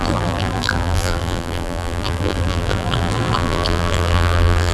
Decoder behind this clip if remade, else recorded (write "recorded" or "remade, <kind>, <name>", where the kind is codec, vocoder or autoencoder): remade, vocoder, BigVGAN v2